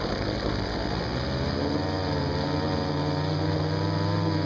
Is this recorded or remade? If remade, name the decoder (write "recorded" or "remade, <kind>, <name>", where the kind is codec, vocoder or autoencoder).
recorded